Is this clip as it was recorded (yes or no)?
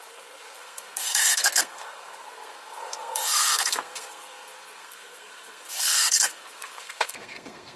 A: no